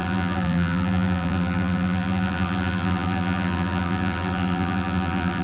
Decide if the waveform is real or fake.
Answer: fake